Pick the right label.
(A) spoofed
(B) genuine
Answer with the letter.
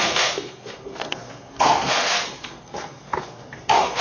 A